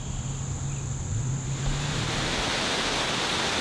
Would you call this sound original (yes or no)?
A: yes